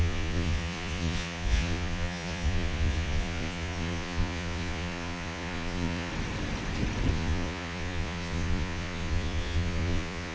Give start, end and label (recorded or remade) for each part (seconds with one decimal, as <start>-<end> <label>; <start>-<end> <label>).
0.0-6.1 remade; 6.1-7.1 recorded; 7.1-10.3 remade